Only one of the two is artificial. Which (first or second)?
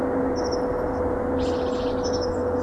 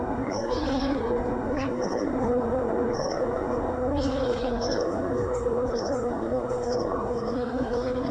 second